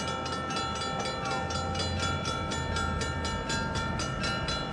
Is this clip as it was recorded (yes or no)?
yes